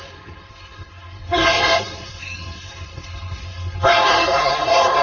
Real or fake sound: fake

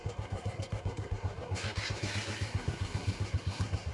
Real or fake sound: fake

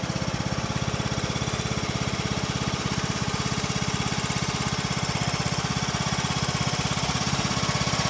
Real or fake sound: real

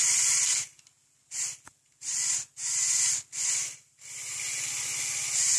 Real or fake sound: real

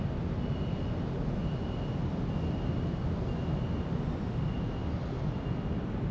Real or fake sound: real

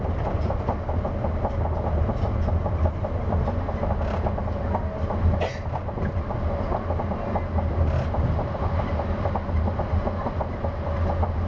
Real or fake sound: real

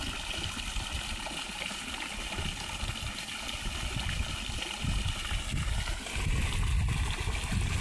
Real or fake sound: real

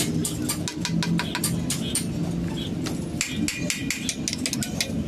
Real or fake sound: real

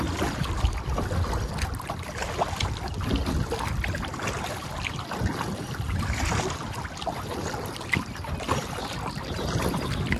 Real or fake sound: real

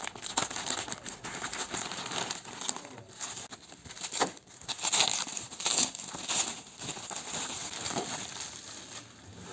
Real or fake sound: real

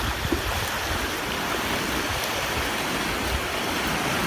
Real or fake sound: real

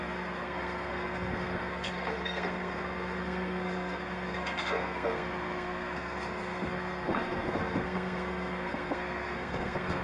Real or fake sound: fake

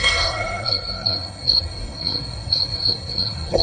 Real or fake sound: fake